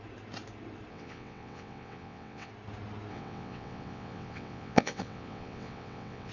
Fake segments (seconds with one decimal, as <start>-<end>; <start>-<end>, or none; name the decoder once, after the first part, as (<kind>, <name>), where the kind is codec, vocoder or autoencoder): 0.9-2.5 (vocoder, WaveNeXt); 3.1-6.3